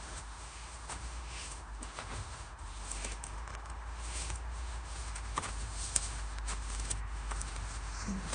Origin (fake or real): fake